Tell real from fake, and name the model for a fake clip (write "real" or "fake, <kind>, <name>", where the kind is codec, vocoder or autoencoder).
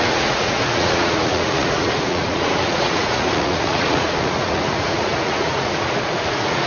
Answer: fake, vocoder, Vocos